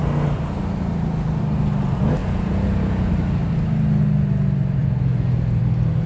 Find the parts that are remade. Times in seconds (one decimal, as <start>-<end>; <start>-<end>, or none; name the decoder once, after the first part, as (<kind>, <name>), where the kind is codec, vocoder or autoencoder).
2.2-3.1 (vocoder, Vocos); 4.8-5.6